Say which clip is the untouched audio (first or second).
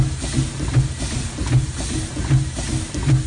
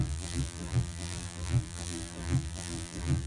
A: first